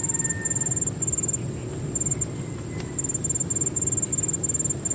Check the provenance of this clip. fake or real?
real